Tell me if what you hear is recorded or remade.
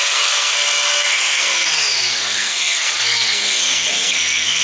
remade